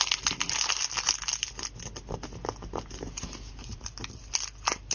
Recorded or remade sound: recorded